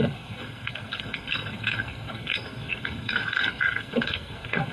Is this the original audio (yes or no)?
no